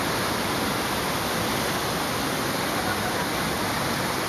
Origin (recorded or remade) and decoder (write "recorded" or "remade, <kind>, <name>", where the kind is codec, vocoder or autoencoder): recorded